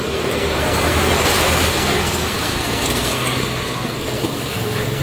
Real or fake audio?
fake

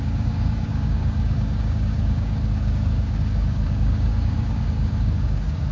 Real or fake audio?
fake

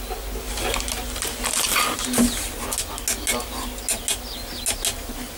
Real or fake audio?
real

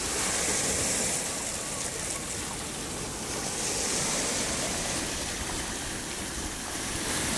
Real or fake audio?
real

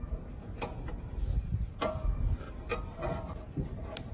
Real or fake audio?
fake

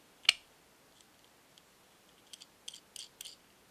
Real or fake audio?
real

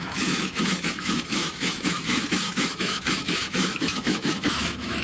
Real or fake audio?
fake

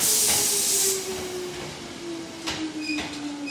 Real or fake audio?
real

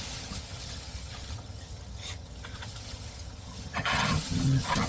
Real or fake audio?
fake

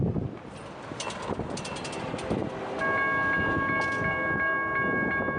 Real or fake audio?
real